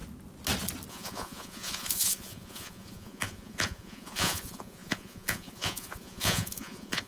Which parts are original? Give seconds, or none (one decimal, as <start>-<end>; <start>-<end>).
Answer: 0.0-0.9